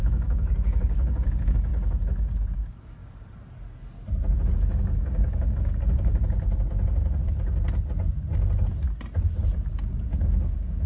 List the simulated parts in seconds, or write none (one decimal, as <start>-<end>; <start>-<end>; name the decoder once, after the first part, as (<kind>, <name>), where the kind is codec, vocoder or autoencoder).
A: 0.0-1.7 (codec, DAC); 2.2-3.0; 5.0-6.1; 9.7-10.9